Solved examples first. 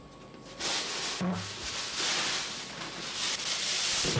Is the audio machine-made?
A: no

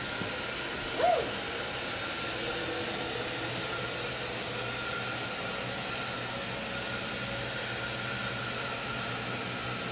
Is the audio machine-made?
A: no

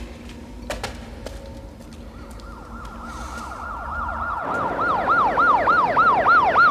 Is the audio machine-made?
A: no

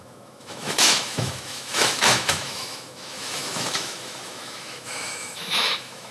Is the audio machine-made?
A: yes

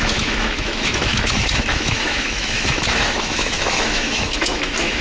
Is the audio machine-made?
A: yes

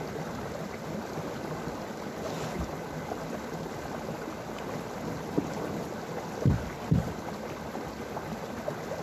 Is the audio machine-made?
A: no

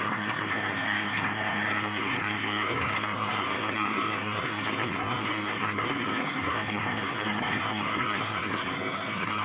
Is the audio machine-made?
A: yes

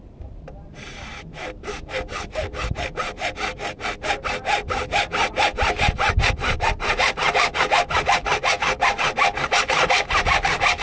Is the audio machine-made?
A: yes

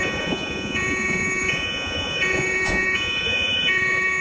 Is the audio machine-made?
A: yes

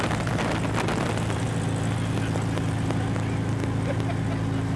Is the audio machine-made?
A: no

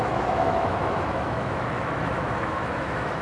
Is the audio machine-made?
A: yes